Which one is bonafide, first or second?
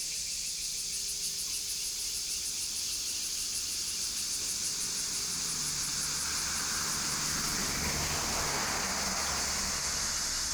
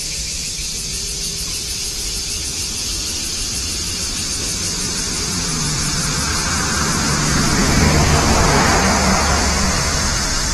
first